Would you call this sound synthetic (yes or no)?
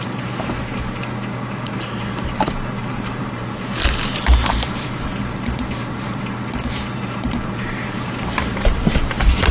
yes